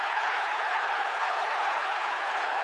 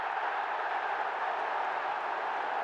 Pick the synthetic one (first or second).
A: first